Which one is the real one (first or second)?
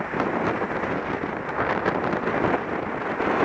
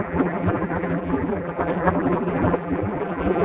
first